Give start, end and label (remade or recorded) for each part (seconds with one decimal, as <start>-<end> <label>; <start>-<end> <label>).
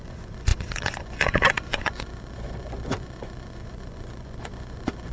0.0-5.1 remade